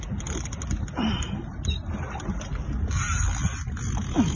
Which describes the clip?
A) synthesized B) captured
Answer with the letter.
B